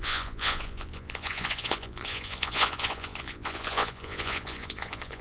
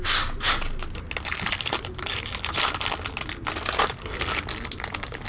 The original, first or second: second